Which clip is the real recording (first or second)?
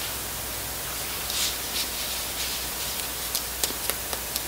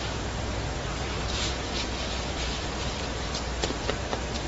first